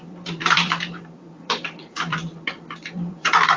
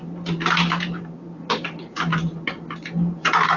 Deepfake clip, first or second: first